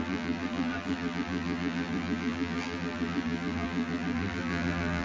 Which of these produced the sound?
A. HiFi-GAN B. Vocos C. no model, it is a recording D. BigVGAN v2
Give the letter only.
D